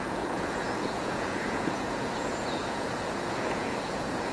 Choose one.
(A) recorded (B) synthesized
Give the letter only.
B